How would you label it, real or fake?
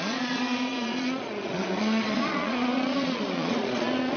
fake